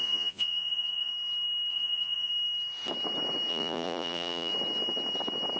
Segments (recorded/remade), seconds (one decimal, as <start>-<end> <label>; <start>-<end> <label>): 0.0-1.1 remade; 1.1-1.7 recorded; 1.7-2.3 remade; 2.3-3.5 recorded; 3.5-4.5 remade; 4.5-5.6 recorded